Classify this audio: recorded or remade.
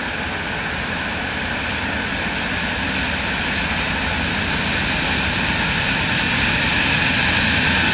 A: recorded